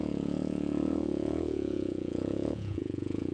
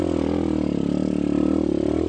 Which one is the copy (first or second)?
first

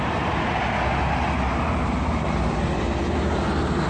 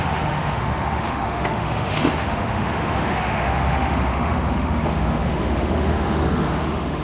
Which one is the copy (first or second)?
second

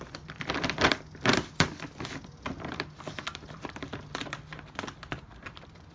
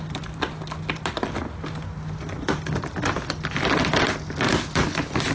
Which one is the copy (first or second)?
first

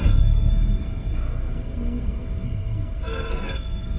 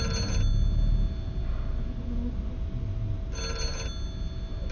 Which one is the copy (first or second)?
first